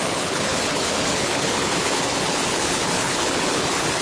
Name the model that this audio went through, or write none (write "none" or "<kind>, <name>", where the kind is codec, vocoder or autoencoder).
codec, HILCodec